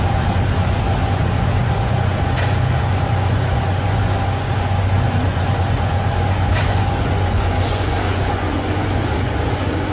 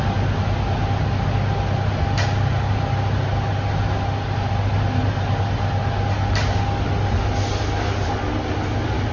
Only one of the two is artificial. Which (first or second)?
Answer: first